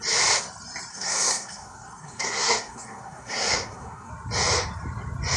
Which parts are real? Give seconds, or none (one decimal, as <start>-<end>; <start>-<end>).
0.0-0.9; 4.1-5.4